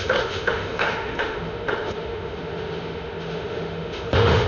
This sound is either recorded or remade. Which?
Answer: remade